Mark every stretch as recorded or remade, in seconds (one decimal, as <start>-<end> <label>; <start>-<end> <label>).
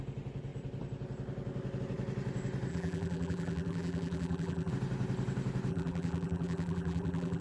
0.0-2.7 recorded; 2.7-4.7 remade; 4.7-5.7 recorded; 5.7-7.4 remade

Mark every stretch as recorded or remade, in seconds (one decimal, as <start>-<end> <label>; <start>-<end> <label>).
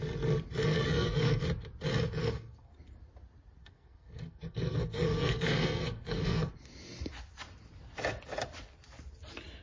0.0-0.7 recorded; 0.7-1.4 remade; 1.4-2.2 recorded; 2.2-2.7 remade; 2.7-3.6 recorded; 3.6-6.5 remade; 6.5-9.6 recorded